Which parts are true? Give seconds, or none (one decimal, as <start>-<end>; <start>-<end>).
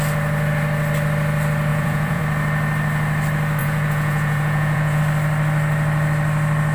0.0-1.7; 2.2-3.6; 5.0-6.7